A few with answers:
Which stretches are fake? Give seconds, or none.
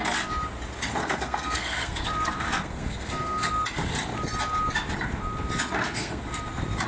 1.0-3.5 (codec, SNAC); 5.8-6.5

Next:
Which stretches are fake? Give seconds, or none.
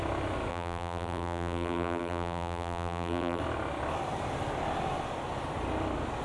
0.5-3.4 (vocoder, BigVGAN v2)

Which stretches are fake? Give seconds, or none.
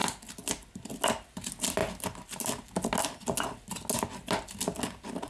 none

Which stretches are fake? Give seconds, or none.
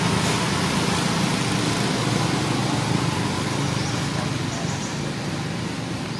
none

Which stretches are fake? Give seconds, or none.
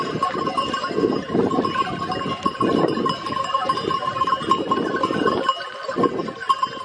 none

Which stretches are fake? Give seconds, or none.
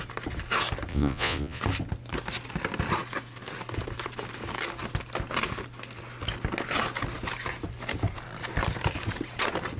0.9-1.6 (vocoder, Vocos)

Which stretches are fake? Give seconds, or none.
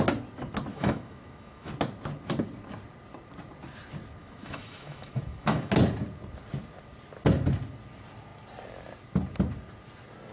0.7-1.7 (autoencoder, DAC-VAE); 4.2-5.7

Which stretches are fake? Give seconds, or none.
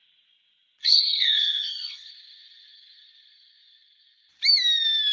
0.8-2.1 (codec, SNAC)